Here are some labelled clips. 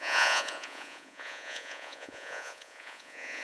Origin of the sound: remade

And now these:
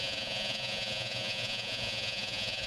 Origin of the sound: remade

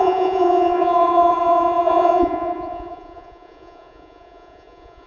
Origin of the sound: remade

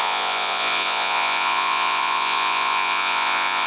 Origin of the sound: remade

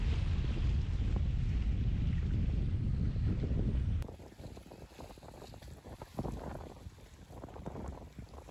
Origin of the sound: recorded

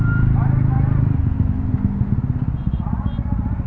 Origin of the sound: recorded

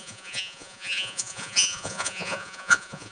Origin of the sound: remade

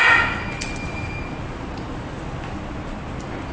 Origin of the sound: recorded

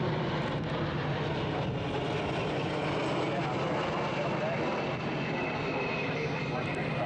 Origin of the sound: recorded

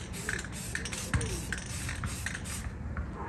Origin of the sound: recorded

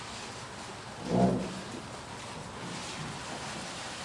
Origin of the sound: recorded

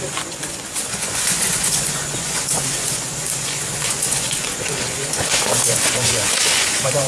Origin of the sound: remade